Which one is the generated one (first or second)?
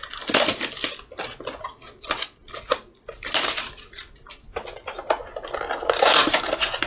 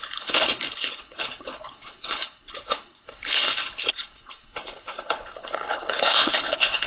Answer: second